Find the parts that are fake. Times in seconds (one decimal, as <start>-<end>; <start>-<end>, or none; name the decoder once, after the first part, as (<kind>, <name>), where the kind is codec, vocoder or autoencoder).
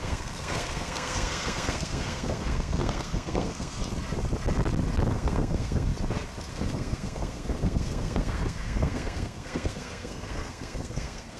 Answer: 0.0-3.8 (codec, SNAC); 5.1-5.9; 6.5-11.4